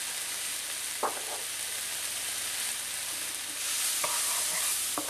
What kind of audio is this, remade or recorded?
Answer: recorded